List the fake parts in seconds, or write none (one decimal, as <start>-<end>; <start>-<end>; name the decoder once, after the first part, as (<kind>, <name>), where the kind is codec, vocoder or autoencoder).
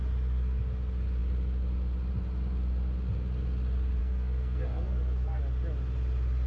4.0-5.4 (codec, SNAC)